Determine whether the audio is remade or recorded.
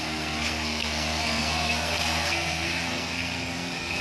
remade